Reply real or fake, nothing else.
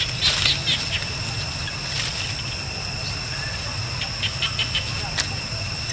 real